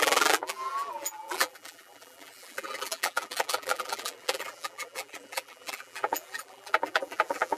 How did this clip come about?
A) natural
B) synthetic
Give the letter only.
B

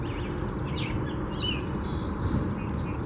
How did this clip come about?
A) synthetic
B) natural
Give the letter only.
B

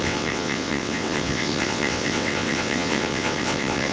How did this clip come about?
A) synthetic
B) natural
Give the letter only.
A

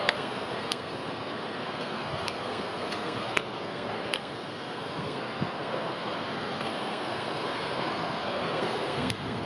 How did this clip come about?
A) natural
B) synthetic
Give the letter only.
B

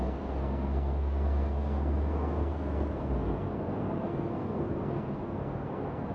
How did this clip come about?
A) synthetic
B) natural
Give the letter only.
A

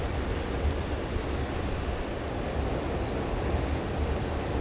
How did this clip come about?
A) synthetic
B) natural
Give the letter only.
B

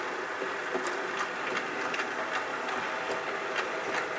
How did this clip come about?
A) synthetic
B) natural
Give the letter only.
B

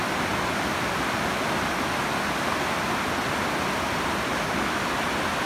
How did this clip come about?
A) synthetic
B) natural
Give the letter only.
B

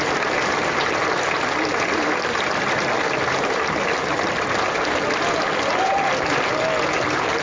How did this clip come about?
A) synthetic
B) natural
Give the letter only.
B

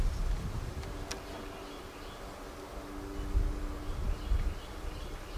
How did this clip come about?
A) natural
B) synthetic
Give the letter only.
A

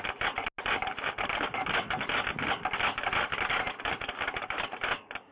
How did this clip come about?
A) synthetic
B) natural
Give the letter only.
B